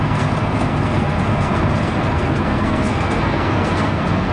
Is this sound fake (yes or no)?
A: yes